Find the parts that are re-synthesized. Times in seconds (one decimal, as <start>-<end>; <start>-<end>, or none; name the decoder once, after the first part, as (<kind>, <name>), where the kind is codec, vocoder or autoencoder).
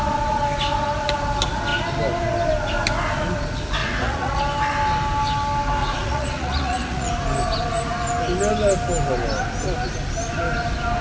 3.8-4.4 (vocoder, Vocos); 5.8-7.1